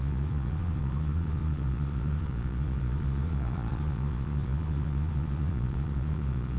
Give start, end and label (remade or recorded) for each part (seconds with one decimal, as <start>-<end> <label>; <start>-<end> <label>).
0.0-6.6 remade